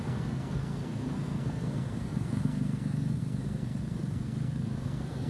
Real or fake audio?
fake